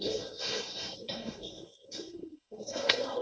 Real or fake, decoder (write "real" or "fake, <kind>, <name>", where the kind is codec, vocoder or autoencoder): fake, codec, SNAC